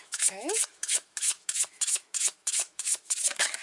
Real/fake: fake